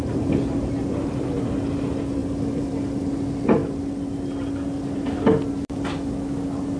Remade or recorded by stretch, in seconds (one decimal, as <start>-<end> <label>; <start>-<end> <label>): 0.0-2.2 recorded; 2.2-3.0 remade; 3.0-6.8 recorded